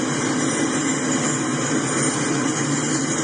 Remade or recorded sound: recorded